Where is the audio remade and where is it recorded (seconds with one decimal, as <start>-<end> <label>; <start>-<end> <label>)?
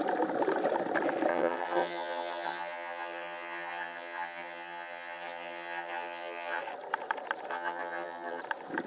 0.0-1.3 recorded; 1.3-6.6 remade; 6.6-7.5 recorded; 7.5-8.4 remade; 8.4-8.9 recorded